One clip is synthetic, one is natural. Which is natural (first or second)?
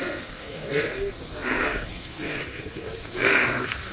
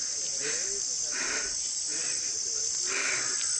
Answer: second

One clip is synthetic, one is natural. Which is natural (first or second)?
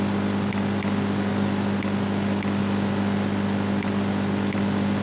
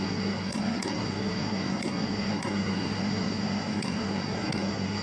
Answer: first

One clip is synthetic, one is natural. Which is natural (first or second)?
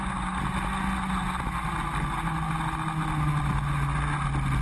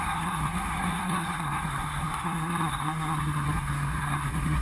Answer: first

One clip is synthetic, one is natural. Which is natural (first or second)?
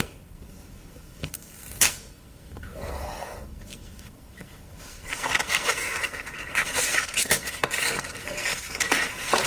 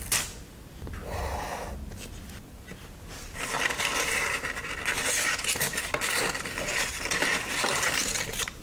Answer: second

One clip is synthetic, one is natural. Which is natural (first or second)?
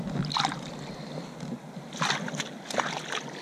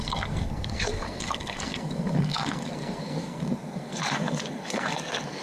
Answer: first